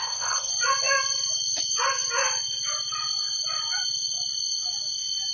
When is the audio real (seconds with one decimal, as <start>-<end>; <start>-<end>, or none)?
0.5-5.3